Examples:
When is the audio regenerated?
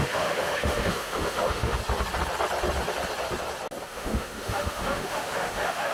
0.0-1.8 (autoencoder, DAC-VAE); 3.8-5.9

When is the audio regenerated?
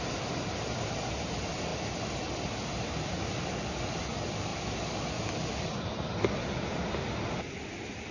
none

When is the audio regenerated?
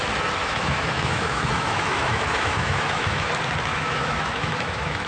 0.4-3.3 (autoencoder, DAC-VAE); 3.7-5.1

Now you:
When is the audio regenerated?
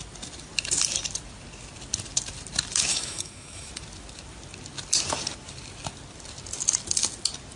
2.9-3.7 (autoencoder, DAC-VAE)